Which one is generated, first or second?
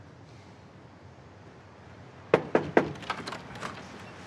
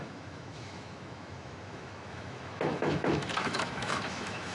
second